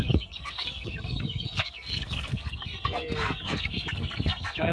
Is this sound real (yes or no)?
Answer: no